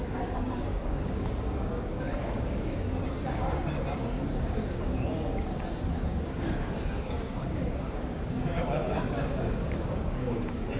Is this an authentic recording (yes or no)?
no